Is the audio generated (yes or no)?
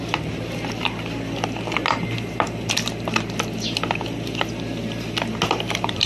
yes